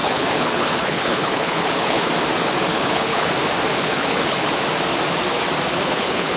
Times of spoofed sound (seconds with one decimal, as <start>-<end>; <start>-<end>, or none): 0.0-2.1; 2.7-3.3; 3.7-4.5; 5.7-6.4